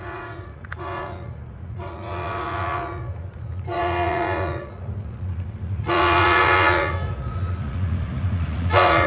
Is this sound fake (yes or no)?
yes